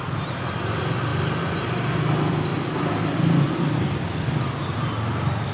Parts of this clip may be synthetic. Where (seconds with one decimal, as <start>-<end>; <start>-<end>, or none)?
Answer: none